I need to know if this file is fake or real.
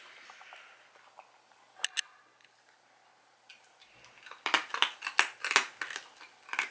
real